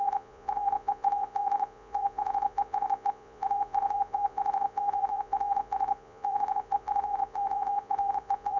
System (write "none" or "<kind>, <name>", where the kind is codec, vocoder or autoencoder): vocoder, Vocos